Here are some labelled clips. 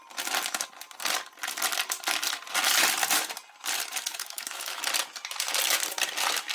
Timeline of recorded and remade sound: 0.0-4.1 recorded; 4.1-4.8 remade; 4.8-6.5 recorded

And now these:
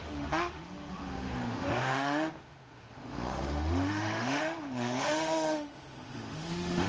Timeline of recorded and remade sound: 0.0-6.9 remade

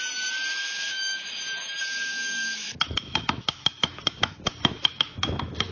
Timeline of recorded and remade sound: 0.0-0.6 recorded; 0.6-1.4 remade; 1.4-2.1 recorded; 2.1-5.7 remade